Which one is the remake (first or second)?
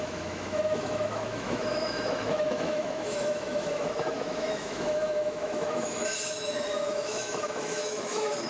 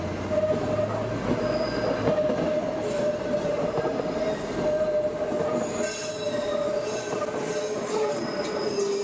first